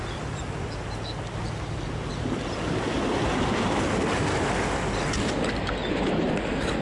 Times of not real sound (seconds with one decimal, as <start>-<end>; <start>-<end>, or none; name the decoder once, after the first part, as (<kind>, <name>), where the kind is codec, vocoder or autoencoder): 5.8-6.3 (vocoder, BigVGAN v2)